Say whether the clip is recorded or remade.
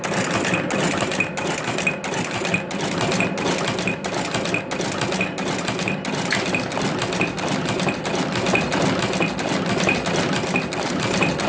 recorded